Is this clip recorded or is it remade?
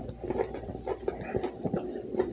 recorded